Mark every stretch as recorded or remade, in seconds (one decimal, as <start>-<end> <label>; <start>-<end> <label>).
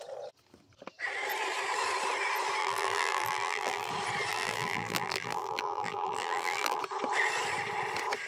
0.0-2.6 recorded; 2.6-3.9 remade; 3.9-4.3 recorded; 4.3-6.8 remade; 6.8-8.3 recorded